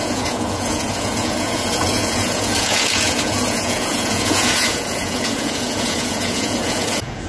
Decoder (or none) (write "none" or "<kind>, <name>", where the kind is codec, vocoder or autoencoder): vocoder, Vocos